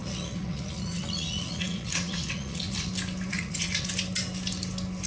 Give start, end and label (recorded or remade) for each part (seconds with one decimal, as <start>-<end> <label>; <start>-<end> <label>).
0.0-2.9 remade; 2.9-3.3 recorded; 3.3-3.9 remade; 3.9-5.1 recorded